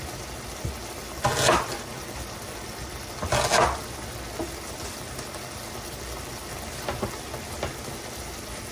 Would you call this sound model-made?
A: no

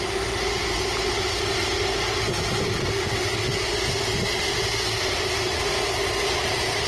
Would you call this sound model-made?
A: no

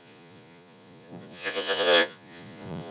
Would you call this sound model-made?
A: yes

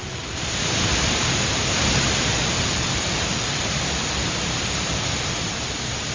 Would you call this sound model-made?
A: yes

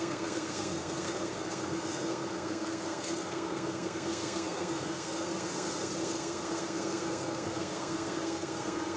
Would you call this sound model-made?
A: yes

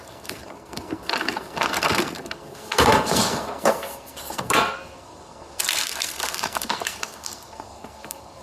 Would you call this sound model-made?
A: yes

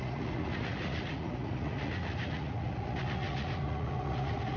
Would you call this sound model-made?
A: yes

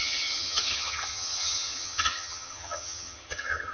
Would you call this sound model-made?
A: yes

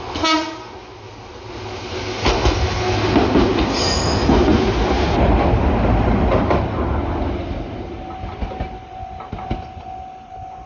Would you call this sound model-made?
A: no